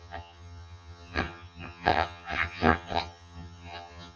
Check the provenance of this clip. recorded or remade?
remade